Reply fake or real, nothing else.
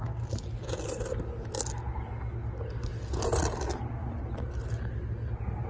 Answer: real